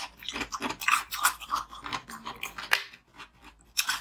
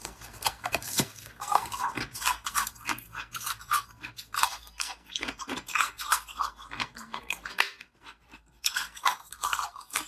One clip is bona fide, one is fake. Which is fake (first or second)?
second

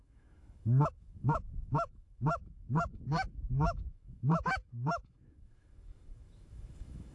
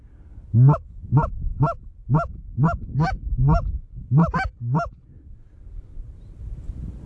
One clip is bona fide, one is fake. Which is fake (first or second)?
first